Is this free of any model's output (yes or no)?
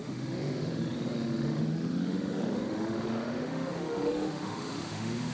no